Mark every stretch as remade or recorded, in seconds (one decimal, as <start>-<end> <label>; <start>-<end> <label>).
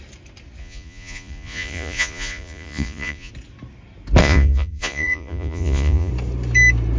0.0-0.6 recorded; 0.6-3.3 remade; 3.3-4.2 recorded; 4.2-6.1 remade; 6.1-7.0 recorded